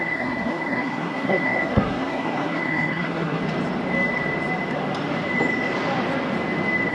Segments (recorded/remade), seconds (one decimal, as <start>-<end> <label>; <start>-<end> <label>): 0.0-3.4 remade; 3.4-6.9 recorded